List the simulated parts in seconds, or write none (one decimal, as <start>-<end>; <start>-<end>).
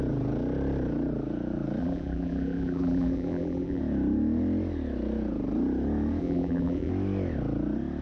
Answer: 1.8-3.8; 6.2-6.9